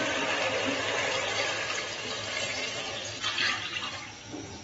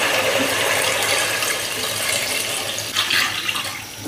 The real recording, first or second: first